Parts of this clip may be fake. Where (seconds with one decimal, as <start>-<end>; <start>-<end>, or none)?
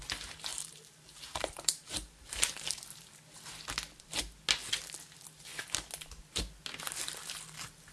0.5-2.8